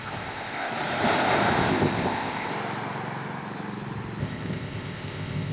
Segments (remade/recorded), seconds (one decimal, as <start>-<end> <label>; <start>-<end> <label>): 0.0-0.7 remade; 0.7-1.7 recorded; 1.7-2.5 remade; 2.5-4.2 recorded; 4.2-5.5 remade